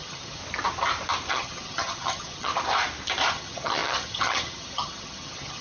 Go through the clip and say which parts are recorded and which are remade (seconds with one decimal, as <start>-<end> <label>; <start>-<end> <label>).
0.0-0.4 remade; 0.4-1.3 recorded; 1.3-2.5 remade; 2.5-3.3 recorded; 3.3-5.6 remade